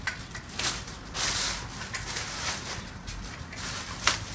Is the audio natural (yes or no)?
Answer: yes